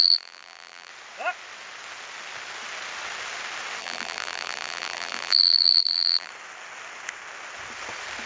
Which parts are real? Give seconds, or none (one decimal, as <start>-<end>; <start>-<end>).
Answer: 0.9-3.8; 6.3-8.3